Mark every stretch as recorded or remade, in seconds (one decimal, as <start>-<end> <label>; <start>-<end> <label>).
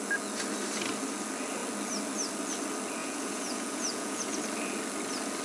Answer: 0.0-3.0 recorded; 3.0-4.4 remade; 4.4-5.4 recorded